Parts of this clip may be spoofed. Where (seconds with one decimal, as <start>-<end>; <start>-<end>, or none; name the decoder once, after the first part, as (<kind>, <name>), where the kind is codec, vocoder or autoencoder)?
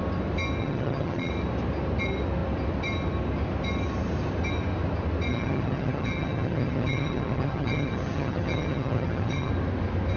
0.6-1.3 (vocoder, HiFi-GAN); 5.3-9.5